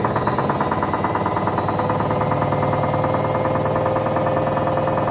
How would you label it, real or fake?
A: real